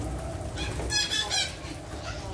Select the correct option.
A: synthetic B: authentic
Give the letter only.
B